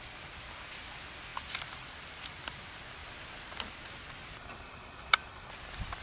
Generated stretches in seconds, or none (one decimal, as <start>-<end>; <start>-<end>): 1.3-2.6